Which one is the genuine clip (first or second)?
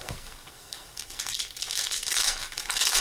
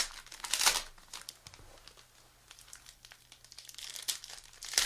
second